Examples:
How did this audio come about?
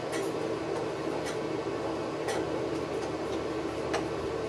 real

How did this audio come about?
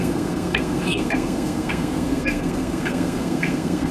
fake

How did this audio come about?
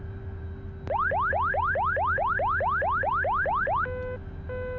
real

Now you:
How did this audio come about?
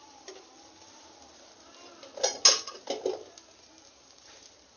real